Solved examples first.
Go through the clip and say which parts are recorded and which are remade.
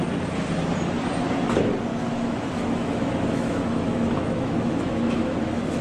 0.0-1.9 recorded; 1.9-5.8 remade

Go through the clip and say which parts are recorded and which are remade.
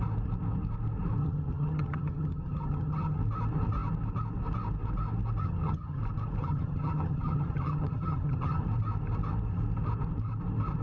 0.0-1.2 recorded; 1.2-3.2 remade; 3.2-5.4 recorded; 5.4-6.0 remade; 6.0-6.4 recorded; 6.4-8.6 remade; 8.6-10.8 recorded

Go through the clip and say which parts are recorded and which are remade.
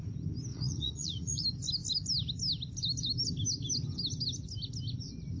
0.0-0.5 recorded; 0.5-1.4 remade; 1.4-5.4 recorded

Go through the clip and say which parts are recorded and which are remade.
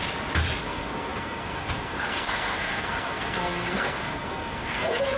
0.0-0.6 recorded; 0.6-5.2 remade